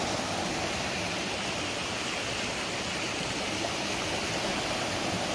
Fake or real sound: real